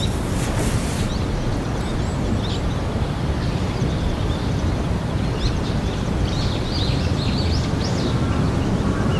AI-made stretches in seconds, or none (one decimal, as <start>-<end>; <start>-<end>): 2.1-7.2